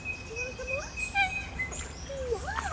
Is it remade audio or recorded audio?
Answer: recorded